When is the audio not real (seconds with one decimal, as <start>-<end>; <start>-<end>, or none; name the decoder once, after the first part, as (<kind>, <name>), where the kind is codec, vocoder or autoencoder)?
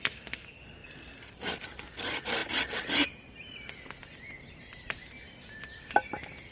none